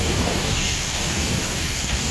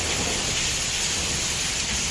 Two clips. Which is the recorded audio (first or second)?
second